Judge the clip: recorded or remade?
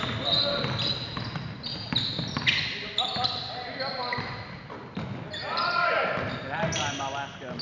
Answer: recorded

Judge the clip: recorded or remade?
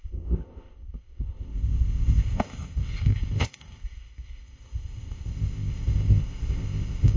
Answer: remade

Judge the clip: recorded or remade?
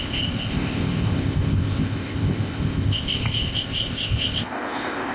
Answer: remade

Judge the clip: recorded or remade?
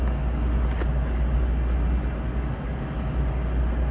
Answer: recorded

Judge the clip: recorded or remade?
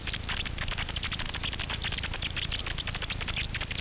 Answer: recorded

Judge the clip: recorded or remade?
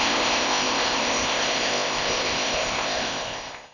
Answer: remade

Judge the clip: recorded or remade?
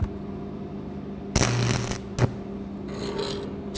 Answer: recorded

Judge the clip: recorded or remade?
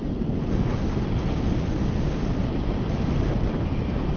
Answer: recorded